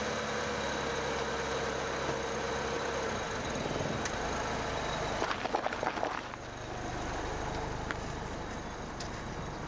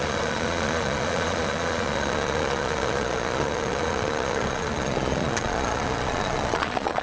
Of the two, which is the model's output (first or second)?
second